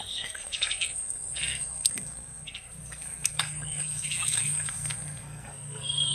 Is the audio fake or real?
fake